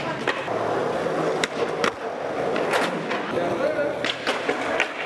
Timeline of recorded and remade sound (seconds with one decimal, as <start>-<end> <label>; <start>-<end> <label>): 0.0-5.1 recorded